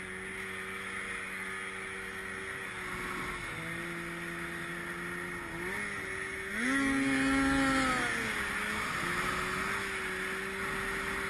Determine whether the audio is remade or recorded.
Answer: recorded